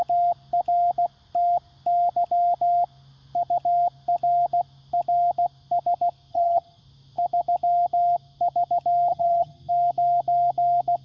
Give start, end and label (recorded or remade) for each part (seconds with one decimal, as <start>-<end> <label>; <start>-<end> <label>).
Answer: 0.0-6.3 recorded; 6.3-6.8 remade; 6.8-9.1 recorded; 9.1-9.7 remade; 9.7-11.0 recorded